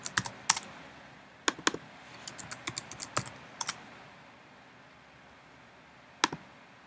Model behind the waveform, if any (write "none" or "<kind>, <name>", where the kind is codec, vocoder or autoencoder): none